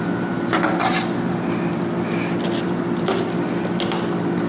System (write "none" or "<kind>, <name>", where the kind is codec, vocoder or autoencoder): none